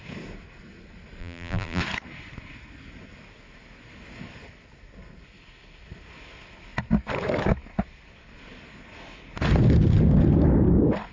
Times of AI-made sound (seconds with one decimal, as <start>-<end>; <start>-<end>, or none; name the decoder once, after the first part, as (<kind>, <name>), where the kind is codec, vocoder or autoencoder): 1.2-1.8 (vocoder, BigVGAN v2)